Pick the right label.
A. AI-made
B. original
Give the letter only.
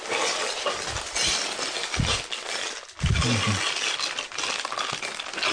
B